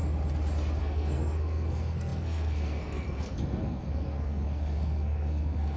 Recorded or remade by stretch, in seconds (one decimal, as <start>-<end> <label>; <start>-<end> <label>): 0.0-0.8 recorded; 0.8-5.8 remade